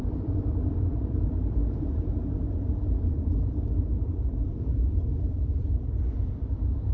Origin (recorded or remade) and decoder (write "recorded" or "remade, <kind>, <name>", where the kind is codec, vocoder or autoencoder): remade, vocoder, BigVGAN v2